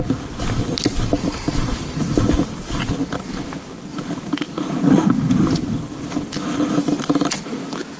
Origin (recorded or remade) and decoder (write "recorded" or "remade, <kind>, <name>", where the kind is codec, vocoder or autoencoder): recorded